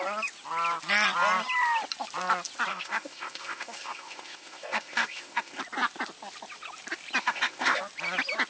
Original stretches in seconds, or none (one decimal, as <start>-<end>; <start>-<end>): 0.0-2.7; 5.6-7.2; 7.8-8.5